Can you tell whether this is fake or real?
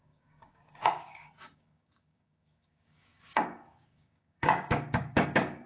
fake